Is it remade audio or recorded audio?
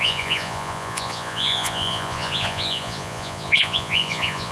remade